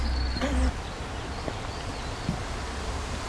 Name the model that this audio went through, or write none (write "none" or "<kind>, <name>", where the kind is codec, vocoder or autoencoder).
none